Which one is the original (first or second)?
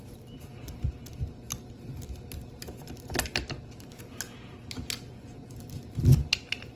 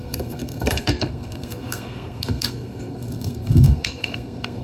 first